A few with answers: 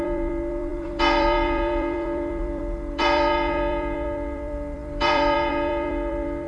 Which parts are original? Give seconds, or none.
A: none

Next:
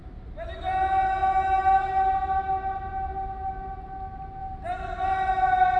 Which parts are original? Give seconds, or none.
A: 0.0-4.4; 5.3-5.8